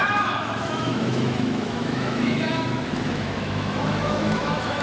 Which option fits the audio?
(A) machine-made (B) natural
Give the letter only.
A